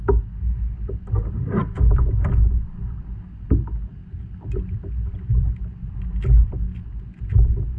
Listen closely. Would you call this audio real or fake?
real